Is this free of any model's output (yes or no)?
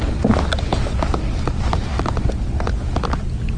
yes